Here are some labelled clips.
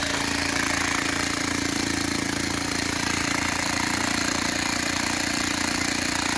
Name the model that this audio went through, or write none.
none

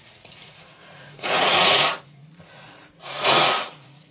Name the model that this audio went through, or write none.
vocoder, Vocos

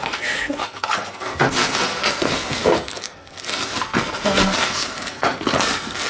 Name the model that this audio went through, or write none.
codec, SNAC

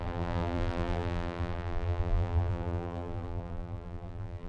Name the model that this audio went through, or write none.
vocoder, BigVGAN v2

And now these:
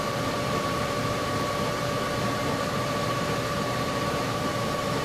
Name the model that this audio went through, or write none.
vocoder, BigVGAN v2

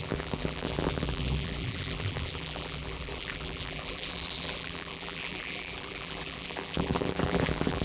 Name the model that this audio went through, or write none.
vocoder, BigVGAN v2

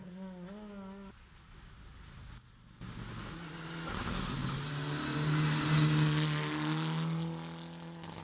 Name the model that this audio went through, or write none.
none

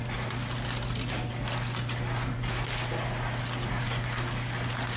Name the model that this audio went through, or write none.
none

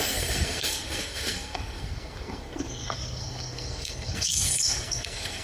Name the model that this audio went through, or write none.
codec, SNAC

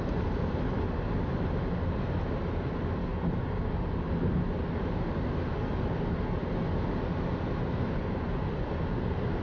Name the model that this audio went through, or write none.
none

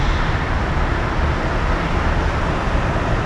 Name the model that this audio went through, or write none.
none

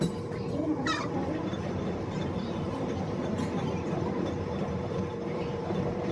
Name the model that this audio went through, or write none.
vocoder, BigVGAN v2